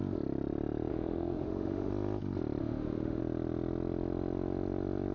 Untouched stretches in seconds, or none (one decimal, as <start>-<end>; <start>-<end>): 0.0-0.9; 1.9-2.6; 3.2-5.1